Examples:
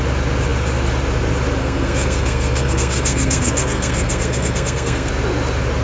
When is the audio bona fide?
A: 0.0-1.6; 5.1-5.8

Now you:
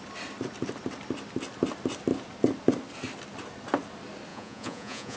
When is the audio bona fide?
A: 0.0-4.3

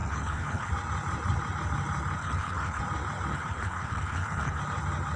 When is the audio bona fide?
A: 0.7-2.2; 2.8-3.3; 4.6-5.2

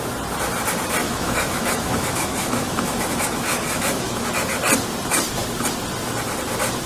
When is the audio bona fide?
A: 0.0-1.0; 4.3-6.9